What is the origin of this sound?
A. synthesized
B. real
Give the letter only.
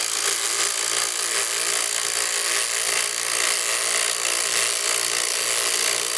B